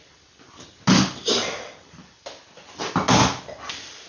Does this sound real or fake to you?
real